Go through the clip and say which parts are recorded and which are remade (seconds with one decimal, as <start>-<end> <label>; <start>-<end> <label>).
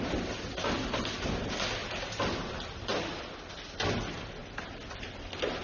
0.0-1.8 recorded; 1.8-3.2 remade; 3.2-4.4 recorded; 4.4-5.1 remade; 5.1-5.6 recorded